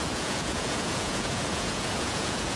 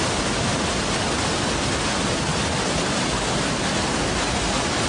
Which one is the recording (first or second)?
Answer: second